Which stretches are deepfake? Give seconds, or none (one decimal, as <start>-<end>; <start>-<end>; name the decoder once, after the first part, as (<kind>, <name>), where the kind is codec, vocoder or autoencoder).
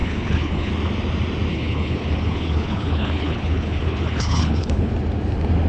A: 0.0-0.7 (codec, HILCodec); 1.5-4.9